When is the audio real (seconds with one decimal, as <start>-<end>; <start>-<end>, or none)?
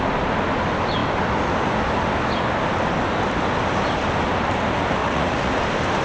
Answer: 0.0-5.0; 5.6-6.0